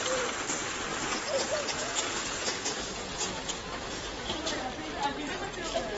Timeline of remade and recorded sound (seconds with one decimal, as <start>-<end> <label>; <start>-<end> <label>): 0.0-0.9 recorded; 0.9-4.5 remade; 4.5-6.0 recorded